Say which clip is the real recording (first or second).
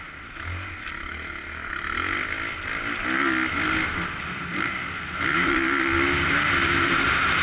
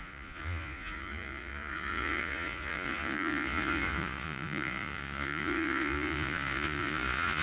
first